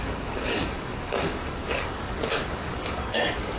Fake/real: fake